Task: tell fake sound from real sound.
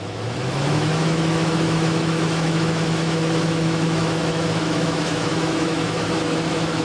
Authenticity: fake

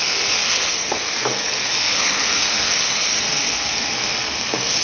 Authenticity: fake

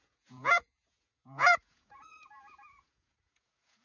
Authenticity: fake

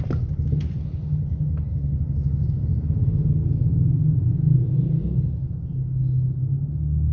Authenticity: real